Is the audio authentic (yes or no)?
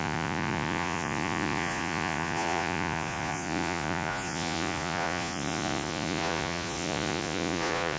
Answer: no